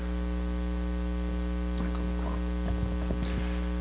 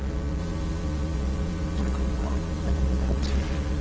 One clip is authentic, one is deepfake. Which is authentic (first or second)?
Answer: first